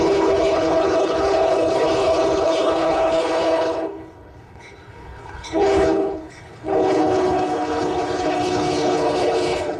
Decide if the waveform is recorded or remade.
remade